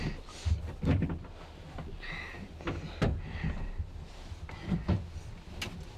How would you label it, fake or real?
real